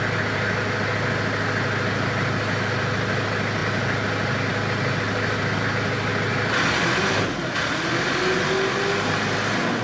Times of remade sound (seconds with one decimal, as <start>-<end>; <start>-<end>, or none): none